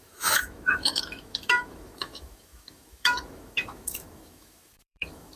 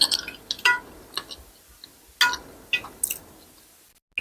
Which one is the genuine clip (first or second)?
second